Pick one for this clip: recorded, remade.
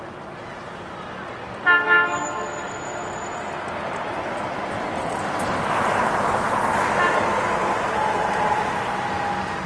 recorded